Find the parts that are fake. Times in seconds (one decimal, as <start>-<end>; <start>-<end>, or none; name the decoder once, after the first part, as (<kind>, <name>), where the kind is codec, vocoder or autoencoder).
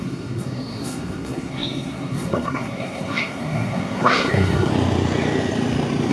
0.0-4.7 (codec, SNAC)